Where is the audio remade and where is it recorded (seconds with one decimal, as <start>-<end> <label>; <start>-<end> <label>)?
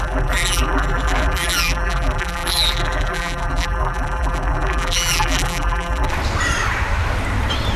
0.0-6.1 remade; 6.1-7.8 recorded